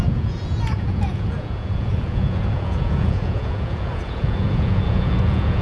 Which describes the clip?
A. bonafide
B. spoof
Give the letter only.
B